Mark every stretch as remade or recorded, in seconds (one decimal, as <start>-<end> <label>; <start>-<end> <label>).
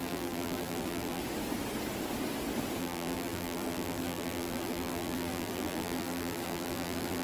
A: 0.0-1.2 remade; 1.2-2.8 recorded; 2.8-7.2 remade